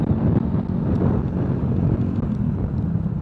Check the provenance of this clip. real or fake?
real